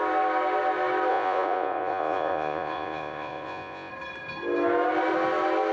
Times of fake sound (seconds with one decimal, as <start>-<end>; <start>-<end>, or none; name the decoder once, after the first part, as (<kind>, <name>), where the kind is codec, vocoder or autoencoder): 1.1-3.9 (vocoder, Vocos)